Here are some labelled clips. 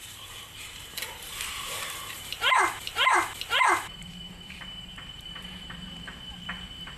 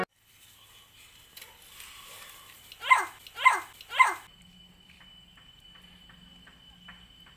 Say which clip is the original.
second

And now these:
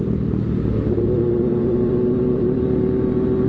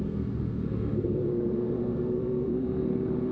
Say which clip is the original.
first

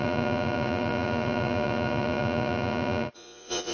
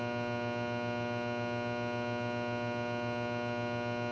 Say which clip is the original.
second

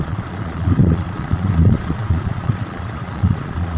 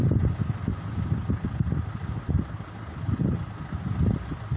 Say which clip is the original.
second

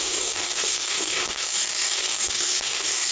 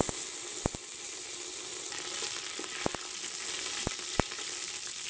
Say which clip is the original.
second